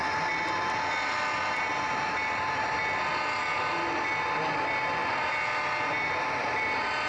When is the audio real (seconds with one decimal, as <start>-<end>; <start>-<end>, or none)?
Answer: 0.0-7.1